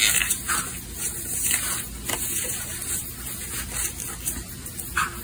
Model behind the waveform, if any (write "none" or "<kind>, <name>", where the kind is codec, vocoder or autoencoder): none